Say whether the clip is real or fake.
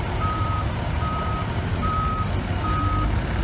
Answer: fake